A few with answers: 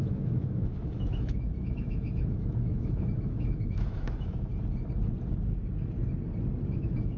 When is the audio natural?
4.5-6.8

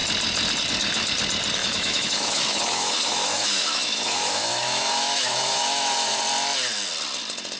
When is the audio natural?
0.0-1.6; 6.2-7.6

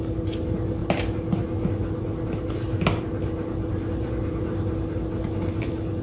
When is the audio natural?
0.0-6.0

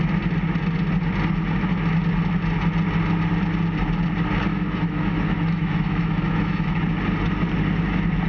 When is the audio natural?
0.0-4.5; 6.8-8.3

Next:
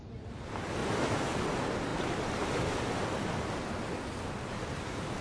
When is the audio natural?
0.0-0.8; 1.4-5.2

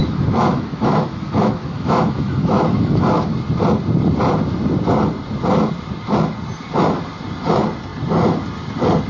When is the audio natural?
3.3-9.1